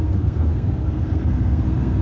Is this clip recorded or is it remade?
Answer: remade